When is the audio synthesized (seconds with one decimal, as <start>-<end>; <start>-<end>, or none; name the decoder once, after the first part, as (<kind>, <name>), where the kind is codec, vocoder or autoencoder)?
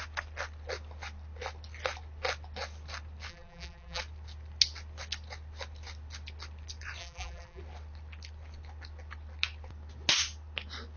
3.3-4.0 (vocoder, BigVGAN v2); 7.0-7.6